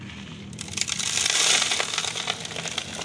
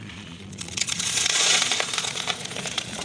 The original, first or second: first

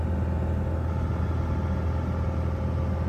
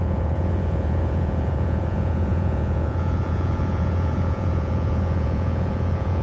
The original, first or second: first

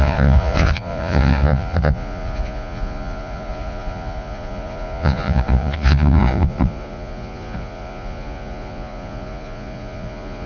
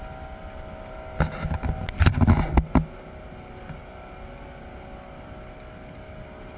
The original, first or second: second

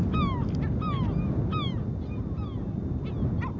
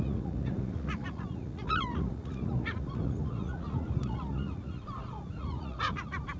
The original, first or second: first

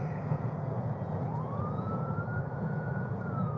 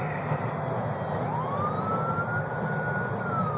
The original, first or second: second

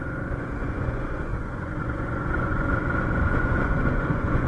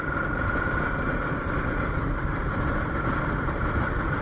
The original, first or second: second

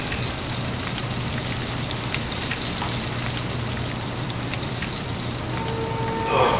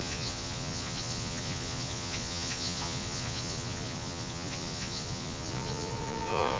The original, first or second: first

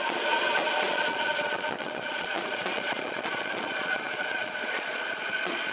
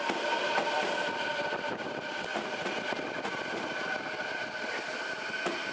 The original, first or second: second